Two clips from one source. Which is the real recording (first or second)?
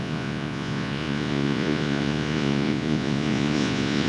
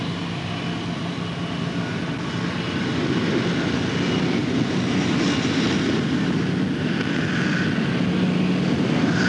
second